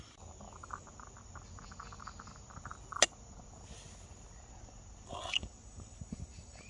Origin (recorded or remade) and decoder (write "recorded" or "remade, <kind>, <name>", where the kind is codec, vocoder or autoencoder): recorded